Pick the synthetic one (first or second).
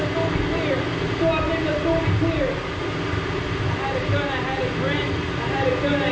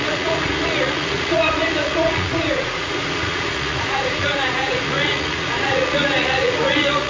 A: second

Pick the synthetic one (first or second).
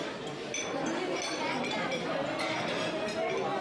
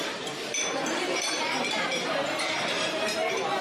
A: second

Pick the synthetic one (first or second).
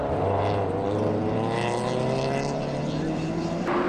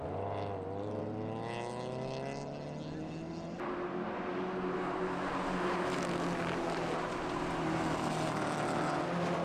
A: first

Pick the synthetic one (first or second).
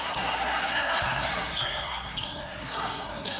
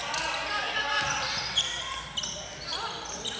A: first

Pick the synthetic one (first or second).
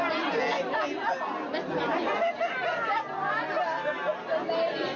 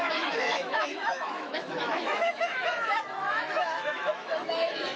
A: second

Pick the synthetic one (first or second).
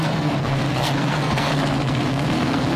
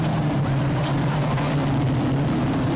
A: first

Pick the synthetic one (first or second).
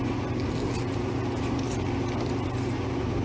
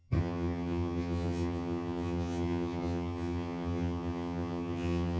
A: second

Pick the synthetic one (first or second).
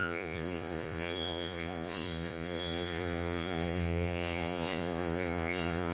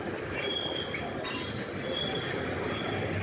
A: first